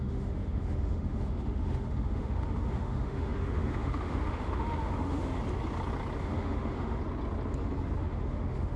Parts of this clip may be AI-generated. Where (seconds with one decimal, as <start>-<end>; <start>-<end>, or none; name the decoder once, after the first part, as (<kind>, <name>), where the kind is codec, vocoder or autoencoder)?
0.0-5.4 (autoencoder, DAC-VAE); 6.2-7.0; 8.0-8.8